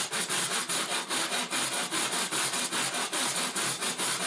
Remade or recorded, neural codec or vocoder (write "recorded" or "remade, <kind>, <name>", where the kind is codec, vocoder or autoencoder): recorded